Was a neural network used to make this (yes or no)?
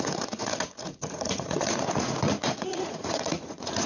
yes